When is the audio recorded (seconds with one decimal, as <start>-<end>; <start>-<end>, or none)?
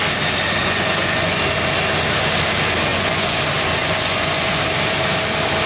0.0-0.6; 1.4-2.9; 3.4-3.8; 4.6-5.7